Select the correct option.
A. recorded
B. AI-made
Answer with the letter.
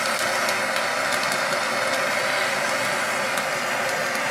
A